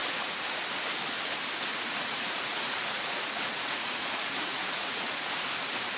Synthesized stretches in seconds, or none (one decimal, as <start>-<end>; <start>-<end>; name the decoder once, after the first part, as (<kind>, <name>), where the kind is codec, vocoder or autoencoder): 0.0-0.6 (vocoder, Vocos); 1.7-5.3